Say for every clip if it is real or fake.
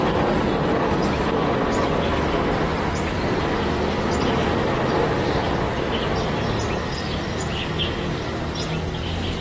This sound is real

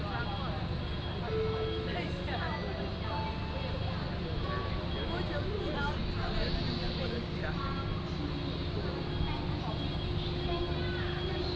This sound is real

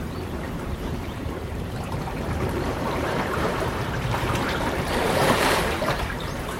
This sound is fake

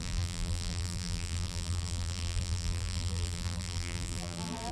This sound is fake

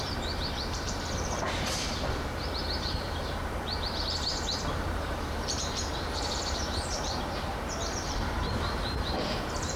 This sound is fake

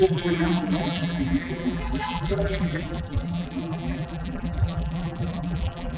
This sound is fake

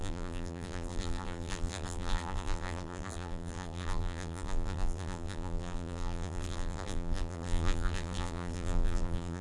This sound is fake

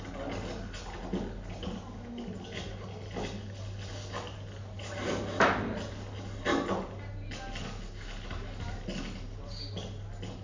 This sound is real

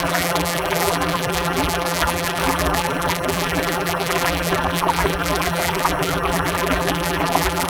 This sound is fake